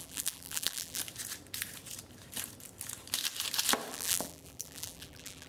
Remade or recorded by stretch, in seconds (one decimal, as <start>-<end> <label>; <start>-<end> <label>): 0.0-1.0 remade; 1.0-3.9 recorded; 3.9-5.5 remade